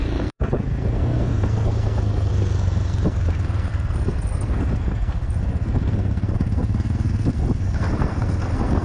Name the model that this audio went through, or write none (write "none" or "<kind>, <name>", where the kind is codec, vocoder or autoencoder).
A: codec, SNAC